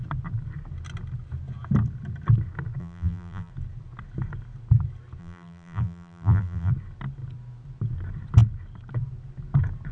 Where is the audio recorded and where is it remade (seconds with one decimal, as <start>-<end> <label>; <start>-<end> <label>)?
0.0-2.8 recorded; 2.8-3.5 remade; 3.5-5.2 recorded; 5.2-6.7 remade; 6.7-9.9 recorded